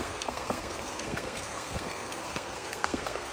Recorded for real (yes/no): no